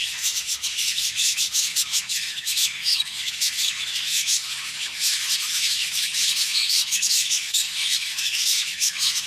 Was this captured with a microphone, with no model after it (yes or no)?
no